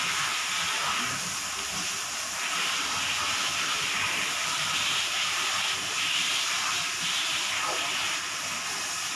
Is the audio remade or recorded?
remade